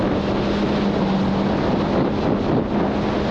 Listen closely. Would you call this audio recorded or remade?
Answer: recorded